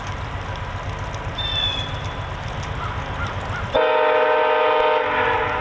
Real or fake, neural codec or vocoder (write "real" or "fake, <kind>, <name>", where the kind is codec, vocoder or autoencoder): real